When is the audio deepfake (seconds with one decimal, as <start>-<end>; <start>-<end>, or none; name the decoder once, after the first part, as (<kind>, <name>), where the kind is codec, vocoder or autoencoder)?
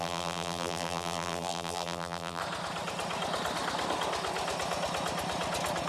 0.0-2.4 (vocoder, BigVGAN v2)